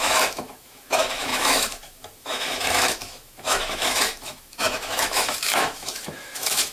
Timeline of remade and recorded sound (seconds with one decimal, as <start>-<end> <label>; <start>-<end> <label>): 0.0-6.7 remade